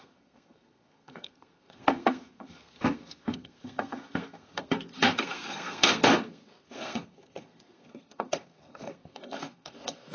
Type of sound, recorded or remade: remade